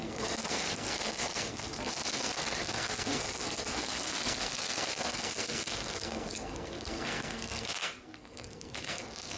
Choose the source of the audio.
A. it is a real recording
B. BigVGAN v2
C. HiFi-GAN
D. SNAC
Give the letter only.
D